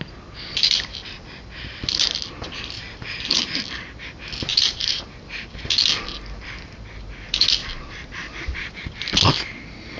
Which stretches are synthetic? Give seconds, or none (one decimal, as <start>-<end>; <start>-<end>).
4.5-5.0